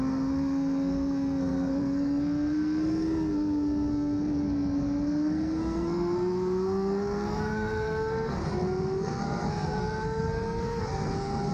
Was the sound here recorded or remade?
remade